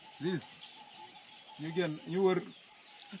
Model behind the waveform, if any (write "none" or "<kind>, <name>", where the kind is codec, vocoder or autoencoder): none